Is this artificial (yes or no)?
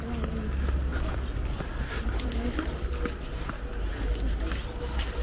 no